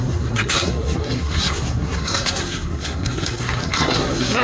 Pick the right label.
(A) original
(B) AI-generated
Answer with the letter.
B